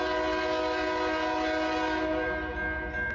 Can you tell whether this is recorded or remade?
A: recorded